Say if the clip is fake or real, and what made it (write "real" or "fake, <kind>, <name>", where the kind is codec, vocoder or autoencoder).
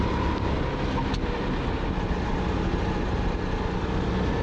real